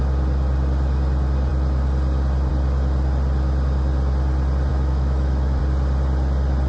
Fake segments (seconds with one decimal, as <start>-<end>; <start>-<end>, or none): 4.7-5.6